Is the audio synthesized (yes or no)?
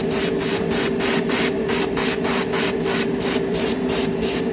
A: no